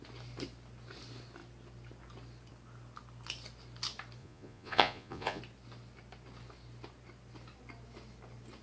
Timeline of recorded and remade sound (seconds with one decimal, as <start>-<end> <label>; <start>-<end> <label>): 0.0-4.2 recorded; 4.2-5.4 remade; 5.4-8.6 recorded